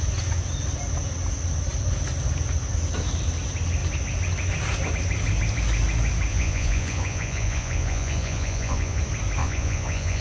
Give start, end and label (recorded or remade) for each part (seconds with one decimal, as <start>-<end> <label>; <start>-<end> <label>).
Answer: 0.0-6.3 recorded; 6.3-9.0 remade; 9.0-9.4 recorded; 9.4-10.2 remade